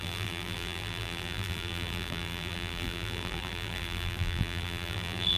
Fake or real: fake